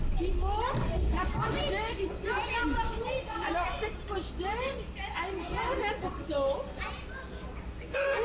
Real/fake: real